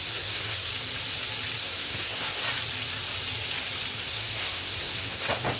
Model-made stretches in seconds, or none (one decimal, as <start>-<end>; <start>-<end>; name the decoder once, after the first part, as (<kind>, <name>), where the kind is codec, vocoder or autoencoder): 0.0-0.7 (codec, SNAC); 1.6-2.4; 4.0-5.6